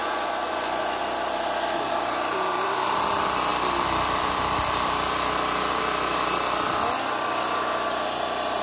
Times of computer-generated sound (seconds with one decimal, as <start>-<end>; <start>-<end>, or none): 0.0-1.0